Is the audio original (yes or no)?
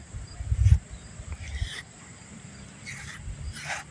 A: yes